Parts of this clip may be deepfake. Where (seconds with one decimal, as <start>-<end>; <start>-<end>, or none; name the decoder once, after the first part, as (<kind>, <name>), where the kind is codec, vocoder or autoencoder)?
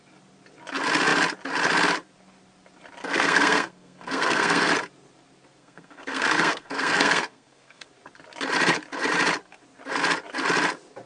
3.0-4.7 (codec, SNAC); 5.6-7.9